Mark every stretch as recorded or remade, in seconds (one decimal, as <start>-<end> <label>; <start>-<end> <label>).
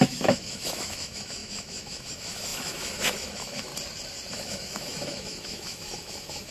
0.0-3.7 remade; 3.7-4.3 recorded; 4.3-6.5 remade